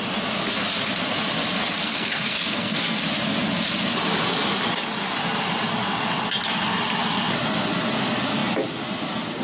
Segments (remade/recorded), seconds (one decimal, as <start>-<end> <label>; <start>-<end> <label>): 0.0-1.8 recorded; 1.8-3.0 remade; 3.0-9.4 recorded